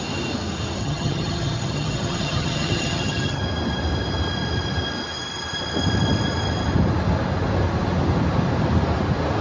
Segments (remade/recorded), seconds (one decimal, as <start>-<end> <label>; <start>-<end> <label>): 0.0-0.8 recorded; 0.8-3.4 remade; 3.4-9.4 recorded

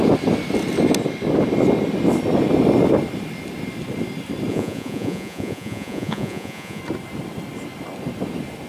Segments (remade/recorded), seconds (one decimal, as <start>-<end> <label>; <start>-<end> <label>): 0.0-4.5 recorded; 4.5-6.8 remade; 6.8-8.7 recorded

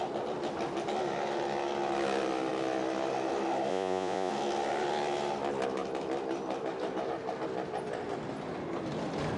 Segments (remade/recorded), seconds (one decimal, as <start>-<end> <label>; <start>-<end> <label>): 0.0-3.7 recorded; 3.7-4.3 remade; 4.3-9.4 recorded